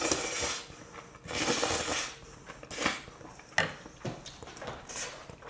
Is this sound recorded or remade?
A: recorded